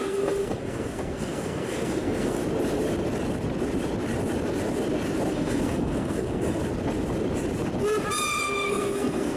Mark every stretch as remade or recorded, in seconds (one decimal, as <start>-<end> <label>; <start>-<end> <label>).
0.0-2.4 remade; 2.4-5.3 recorded; 5.3-6.6 remade; 6.6-8.4 recorded; 8.4-9.4 remade